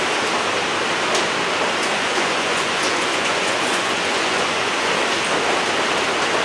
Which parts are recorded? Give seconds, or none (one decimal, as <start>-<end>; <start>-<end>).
0.0-1.8; 4.9-6.4